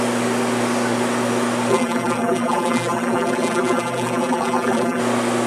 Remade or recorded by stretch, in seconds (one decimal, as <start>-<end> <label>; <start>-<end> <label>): 0.0-1.7 recorded; 1.7-5.0 remade; 5.0-5.5 recorded